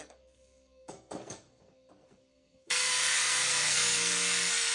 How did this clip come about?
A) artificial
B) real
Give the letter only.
A